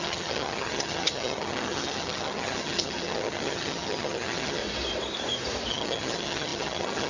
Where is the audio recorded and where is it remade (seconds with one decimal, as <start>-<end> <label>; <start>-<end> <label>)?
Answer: 0.0-4.6 remade; 4.6-5.7 recorded; 5.7-7.1 remade